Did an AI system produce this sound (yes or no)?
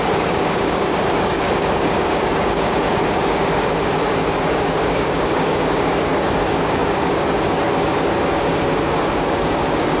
yes